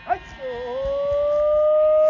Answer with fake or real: real